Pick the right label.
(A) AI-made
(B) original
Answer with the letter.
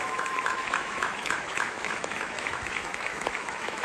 A